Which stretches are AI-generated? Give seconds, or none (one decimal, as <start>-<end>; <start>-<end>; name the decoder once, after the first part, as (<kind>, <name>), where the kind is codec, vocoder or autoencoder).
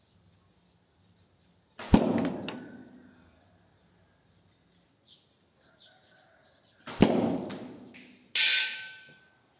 8.5-9.2 (autoencoder, DAC-VAE)